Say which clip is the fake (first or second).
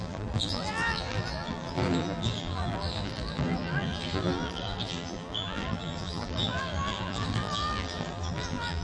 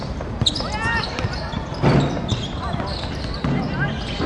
first